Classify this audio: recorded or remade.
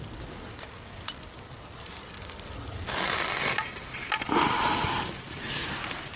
remade